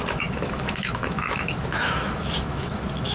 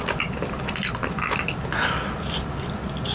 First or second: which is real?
second